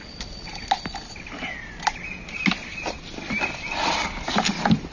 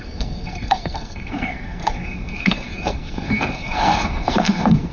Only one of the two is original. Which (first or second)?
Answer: first